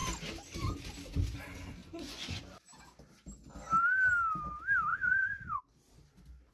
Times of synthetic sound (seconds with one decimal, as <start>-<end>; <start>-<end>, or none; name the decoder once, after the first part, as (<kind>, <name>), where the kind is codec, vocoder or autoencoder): 1.8-2.4 (vocoder, Vocos); 4.9-5.6